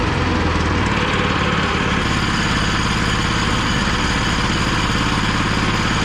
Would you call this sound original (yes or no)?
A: yes